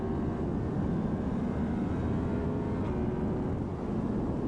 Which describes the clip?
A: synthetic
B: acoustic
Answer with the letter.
B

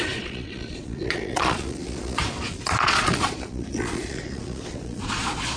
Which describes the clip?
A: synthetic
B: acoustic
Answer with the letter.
A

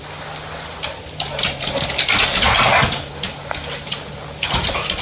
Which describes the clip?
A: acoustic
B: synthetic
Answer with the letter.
A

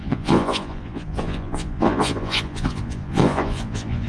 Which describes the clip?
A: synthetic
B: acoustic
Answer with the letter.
A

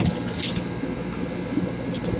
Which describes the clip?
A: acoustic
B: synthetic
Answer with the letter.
A